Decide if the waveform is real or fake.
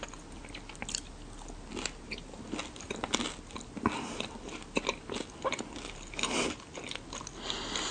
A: real